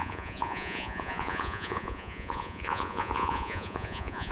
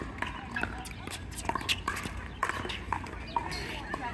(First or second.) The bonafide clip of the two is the second